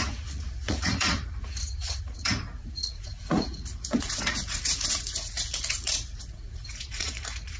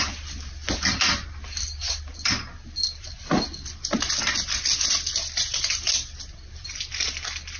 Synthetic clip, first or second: first